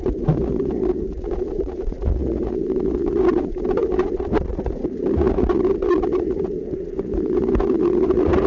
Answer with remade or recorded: remade